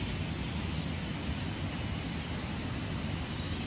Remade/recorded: recorded